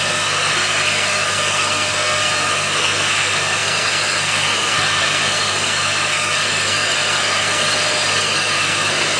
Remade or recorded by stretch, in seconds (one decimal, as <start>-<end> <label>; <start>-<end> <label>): 0.0-9.2 remade